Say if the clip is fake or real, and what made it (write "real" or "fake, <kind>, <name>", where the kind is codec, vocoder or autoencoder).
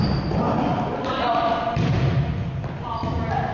real